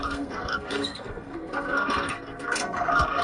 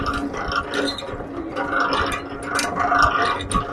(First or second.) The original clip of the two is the second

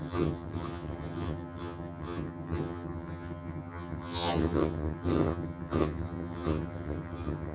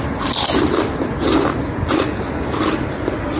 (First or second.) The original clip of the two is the second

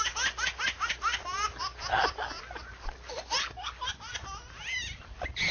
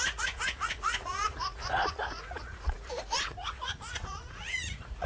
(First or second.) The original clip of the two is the first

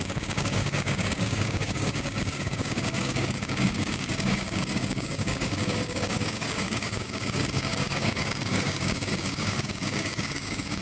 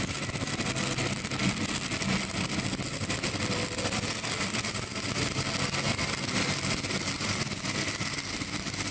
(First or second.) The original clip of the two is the second